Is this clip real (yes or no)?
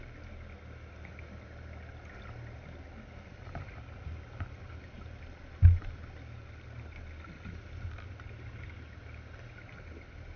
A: yes